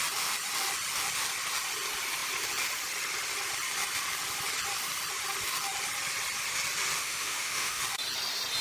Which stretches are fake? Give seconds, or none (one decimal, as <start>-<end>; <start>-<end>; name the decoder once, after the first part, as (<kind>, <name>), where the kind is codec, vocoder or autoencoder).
7.0-7.8 (autoencoder, DAC-VAE)